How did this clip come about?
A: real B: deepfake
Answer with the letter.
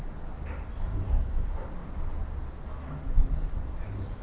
A